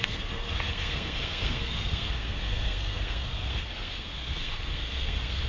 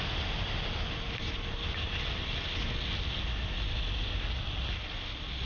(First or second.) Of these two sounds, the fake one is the first